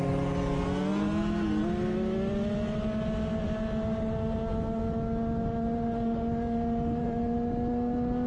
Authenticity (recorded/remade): recorded